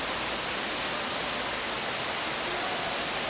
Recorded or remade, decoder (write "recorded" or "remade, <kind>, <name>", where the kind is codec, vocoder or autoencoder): recorded